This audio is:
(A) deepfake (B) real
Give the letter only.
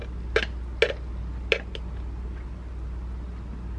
B